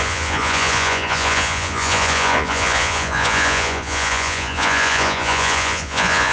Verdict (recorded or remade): remade